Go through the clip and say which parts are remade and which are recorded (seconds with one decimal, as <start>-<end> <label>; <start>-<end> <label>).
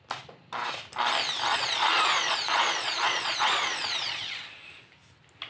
0.0-1.5 recorded; 1.5-4.8 remade; 4.8-5.5 recorded